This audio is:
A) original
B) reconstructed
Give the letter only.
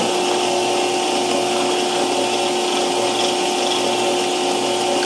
A